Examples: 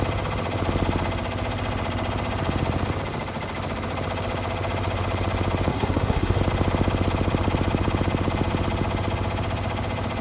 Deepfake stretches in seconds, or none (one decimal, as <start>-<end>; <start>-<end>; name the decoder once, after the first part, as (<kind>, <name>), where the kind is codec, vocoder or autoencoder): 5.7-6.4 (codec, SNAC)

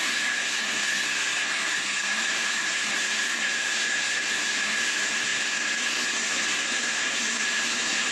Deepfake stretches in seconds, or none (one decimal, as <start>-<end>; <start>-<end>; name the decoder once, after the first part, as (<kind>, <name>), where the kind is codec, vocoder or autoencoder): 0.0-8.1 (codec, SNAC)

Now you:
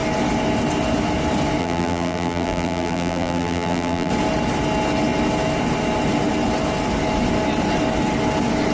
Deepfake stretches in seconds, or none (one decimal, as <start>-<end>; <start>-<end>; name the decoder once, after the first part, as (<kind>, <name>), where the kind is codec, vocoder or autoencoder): 1.6-4.1 (vocoder, BigVGAN v2)

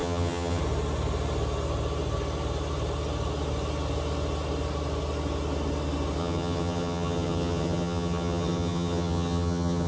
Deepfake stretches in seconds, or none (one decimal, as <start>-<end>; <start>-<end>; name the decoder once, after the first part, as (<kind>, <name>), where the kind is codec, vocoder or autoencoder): 0.0-0.6 (vocoder, HiFi-GAN); 6.2-9.9

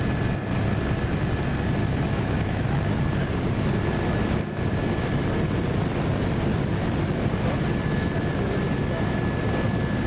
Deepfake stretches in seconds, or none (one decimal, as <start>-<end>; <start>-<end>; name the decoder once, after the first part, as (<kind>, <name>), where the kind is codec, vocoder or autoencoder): 1.8-2.9 (autoencoder, DAC-VAE)

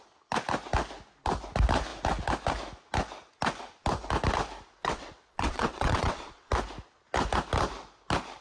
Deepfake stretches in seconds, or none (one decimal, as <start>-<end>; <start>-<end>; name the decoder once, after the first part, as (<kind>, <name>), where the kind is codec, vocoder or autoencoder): 4.8-6.5 (vocoder, WaveNeXt)